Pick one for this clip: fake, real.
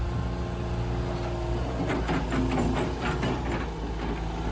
real